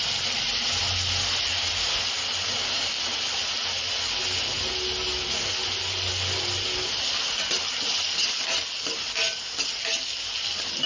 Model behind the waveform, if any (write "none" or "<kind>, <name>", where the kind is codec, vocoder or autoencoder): none